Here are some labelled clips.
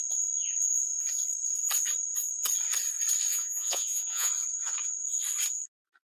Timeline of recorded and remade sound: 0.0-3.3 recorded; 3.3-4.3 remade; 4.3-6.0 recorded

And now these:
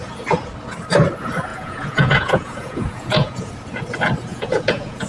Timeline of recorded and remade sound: 0.0-1.5 recorded; 1.5-3.5 remade; 3.5-4.3 recorded; 4.3-5.1 remade

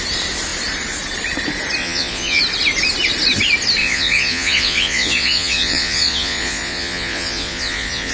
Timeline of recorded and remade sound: 0.0-1.8 recorded; 1.8-2.4 remade; 2.4-3.8 recorded; 3.8-8.1 remade

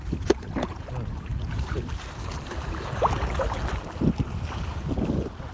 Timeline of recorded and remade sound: 0.0-5.5 recorded

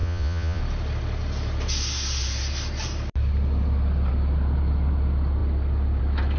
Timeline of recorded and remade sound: 0.0-0.6 remade; 0.6-6.4 recorded

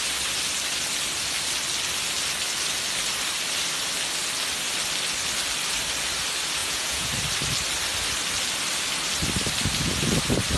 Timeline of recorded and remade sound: 0.0-6.6 recorded; 6.6-7.1 remade; 7.1-10.6 recorded

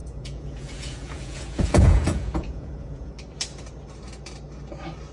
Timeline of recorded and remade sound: 0.0-3.1 remade; 3.1-5.1 recorded

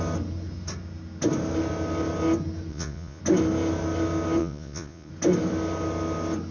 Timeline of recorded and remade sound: 0.0-2.7 recorded; 2.7-3.2 remade; 3.2-4.4 recorded; 4.4-5.1 remade; 5.1-6.5 recorded